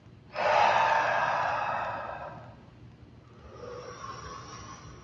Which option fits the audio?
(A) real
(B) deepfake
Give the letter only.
A